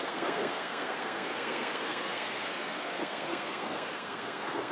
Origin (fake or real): fake